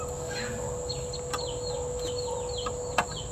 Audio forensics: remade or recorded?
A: recorded